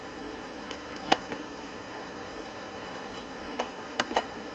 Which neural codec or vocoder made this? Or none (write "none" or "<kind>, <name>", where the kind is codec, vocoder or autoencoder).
codec, SNAC